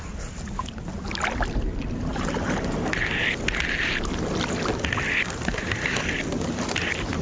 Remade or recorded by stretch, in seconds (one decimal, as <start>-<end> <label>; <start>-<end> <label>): 0.0-7.2 recorded